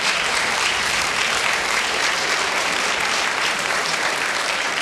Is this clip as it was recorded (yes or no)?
no